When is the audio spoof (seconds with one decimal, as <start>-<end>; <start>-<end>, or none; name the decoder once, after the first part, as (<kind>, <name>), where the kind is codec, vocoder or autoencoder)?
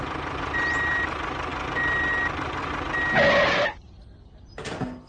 none